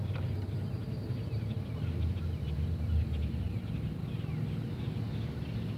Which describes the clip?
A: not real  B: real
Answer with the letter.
B